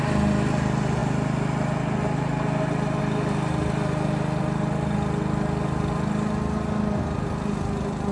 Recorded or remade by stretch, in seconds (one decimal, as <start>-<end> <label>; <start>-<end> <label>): 0.0-8.1 recorded